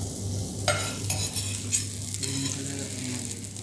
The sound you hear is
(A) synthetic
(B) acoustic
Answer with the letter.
B